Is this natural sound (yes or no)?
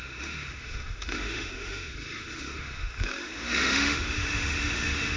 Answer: no